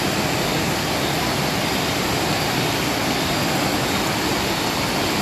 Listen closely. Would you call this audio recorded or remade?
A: recorded